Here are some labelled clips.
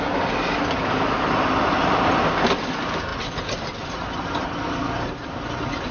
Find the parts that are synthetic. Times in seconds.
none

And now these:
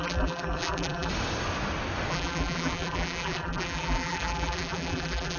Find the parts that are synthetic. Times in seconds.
0.0-1.1; 2.1-5.4

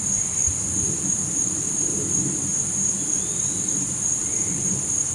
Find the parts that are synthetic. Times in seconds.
0.0-5.1

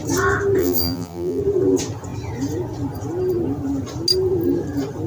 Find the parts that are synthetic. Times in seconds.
0.6-1.4

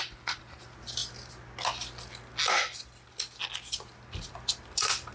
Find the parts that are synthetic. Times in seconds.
none

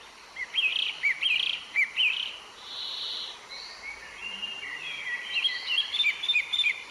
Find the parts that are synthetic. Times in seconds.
0.0-6.9